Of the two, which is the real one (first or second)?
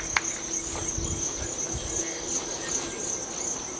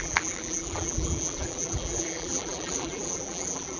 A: first